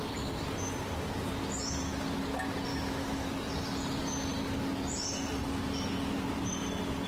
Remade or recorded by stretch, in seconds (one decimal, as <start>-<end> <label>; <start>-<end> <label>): 0.0-2.7 recorded; 2.7-3.3 remade; 3.3-7.1 recorded

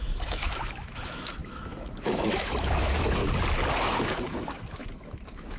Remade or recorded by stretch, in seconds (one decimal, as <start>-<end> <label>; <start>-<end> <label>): 0.0-3.2 remade; 3.2-3.8 recorded; 3.8-5.6 remade